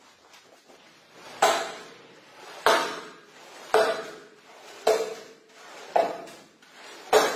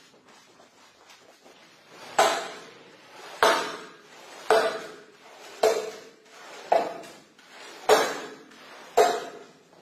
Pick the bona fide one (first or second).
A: first